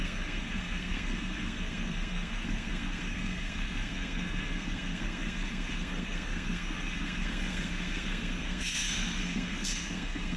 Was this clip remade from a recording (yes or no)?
yes